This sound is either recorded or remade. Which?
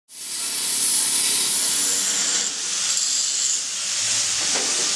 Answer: recorded